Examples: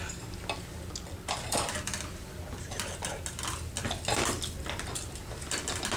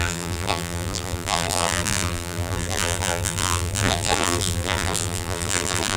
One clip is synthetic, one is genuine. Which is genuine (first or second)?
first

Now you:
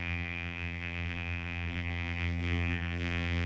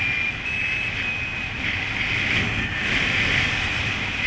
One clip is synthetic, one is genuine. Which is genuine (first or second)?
second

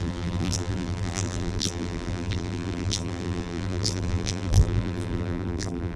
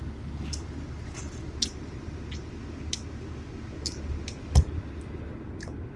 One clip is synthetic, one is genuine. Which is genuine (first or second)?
second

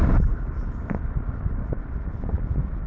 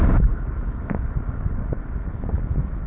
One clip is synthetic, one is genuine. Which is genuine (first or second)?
second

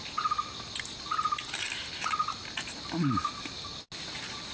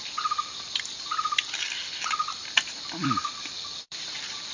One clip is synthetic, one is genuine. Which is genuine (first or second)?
first